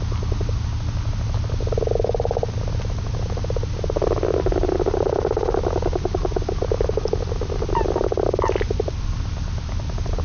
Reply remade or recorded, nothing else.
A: recorded